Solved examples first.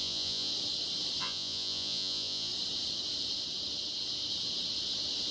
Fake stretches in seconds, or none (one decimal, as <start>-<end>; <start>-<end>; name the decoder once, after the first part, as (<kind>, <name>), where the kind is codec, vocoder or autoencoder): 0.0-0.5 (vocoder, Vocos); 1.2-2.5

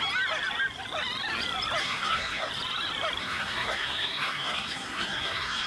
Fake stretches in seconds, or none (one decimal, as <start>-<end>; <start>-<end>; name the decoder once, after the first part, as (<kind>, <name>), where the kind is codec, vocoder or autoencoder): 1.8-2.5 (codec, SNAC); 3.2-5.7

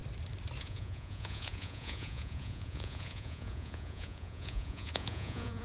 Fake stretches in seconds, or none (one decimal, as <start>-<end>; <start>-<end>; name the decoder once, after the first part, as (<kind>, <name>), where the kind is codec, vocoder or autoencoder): 0.6-5.6 (vocoder, Vocos)

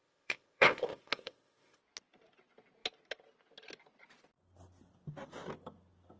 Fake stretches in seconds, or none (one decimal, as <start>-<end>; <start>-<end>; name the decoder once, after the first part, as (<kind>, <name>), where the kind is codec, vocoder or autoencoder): 0.0-1.8 (codec, ZipCodec)

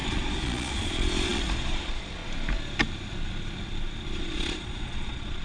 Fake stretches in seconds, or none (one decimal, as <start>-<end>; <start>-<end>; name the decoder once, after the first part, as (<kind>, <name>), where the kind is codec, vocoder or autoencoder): 0.0-2.2 (vocoder, Vocos); 4.2-5.4

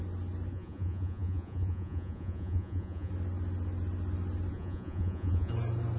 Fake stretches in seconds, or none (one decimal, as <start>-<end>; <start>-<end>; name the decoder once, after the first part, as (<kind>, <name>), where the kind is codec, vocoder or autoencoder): 0.5-3.1 (vocoder, Vocos); 4.5-5.5

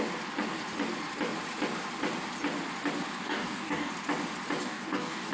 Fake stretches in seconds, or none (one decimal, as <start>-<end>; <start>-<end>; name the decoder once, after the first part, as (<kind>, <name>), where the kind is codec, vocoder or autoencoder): 3.2-3.9 (codec, DAC); 4.6-5.3

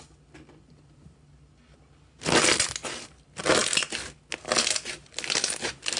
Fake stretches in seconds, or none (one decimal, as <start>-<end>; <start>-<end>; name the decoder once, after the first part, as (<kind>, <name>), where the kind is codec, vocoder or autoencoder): none